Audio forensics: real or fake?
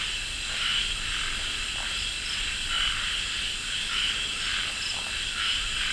real